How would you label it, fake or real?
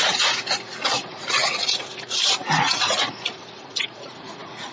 fake